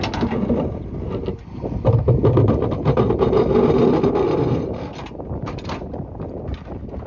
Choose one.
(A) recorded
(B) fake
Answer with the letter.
A